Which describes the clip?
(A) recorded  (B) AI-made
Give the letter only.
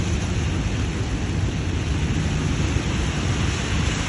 A